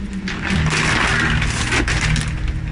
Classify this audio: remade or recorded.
recorded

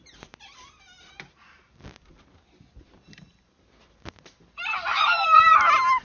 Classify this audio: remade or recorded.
recorded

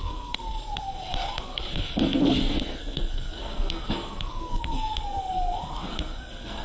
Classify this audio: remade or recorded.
remade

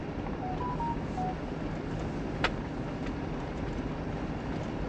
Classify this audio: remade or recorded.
recorded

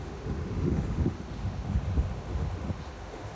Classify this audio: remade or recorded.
remade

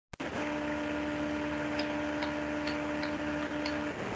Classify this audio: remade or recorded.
recorded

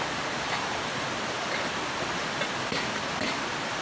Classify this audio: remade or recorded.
recorded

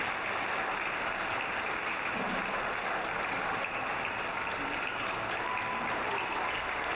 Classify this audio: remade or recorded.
recorded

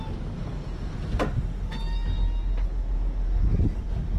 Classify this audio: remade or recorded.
recorded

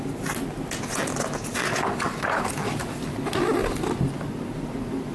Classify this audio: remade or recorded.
recorded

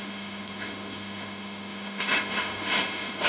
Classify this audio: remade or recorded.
remade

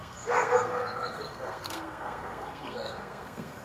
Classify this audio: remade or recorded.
remade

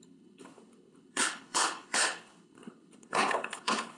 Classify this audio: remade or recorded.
remade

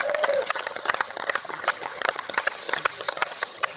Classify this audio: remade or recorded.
remade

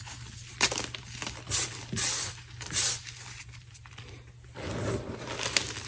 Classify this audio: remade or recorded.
recorded